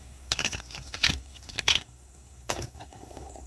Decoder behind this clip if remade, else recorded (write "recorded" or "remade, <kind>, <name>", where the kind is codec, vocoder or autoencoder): remade, codec, SNAC